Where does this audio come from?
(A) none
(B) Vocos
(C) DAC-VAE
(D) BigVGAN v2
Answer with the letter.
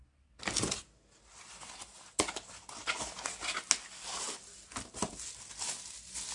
A